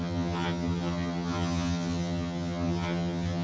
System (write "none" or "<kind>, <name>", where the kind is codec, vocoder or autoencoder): vocoder, HiFi-GAN